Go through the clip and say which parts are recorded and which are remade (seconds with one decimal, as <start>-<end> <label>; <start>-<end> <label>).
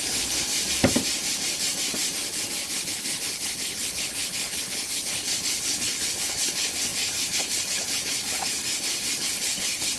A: 0.0-0.5 remade; 0.5-2.9 recorded; 2.9-10.0 remade